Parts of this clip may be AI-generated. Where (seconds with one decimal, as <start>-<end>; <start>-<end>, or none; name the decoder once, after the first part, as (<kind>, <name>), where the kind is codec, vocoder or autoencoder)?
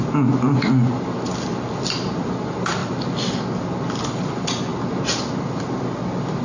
none